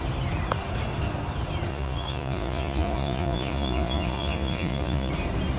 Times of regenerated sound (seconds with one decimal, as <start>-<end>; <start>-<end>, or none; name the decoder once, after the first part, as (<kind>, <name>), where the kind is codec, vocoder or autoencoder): 1.7-5.1 (vocoder, Vocos)